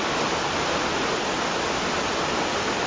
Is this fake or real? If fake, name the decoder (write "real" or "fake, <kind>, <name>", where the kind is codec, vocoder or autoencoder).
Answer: real